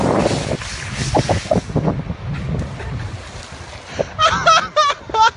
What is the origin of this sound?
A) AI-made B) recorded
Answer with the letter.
B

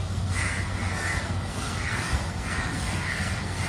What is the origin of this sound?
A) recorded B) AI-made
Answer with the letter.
B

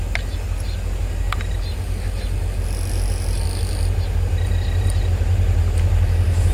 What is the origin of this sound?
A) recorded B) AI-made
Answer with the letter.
A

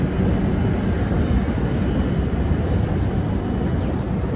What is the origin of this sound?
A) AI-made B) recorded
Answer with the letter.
B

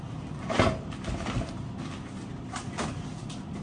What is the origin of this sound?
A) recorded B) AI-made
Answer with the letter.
A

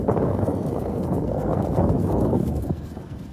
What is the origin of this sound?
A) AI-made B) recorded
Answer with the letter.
A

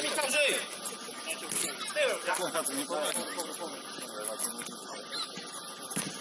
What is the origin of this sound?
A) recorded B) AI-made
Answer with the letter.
A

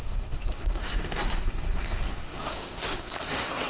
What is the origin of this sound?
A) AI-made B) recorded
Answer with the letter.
A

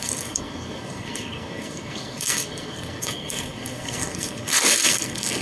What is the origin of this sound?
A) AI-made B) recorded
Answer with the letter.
A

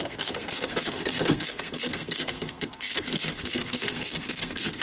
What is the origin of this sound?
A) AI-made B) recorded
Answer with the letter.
A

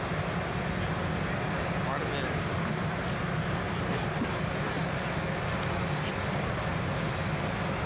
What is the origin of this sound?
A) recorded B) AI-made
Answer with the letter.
A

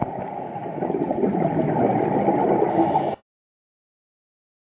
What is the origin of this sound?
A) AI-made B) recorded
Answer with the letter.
B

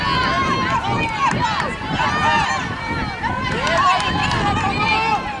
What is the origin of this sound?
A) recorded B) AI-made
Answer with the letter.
A